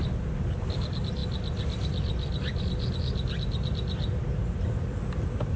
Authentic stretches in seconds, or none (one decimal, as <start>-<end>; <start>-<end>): 0.0-5.6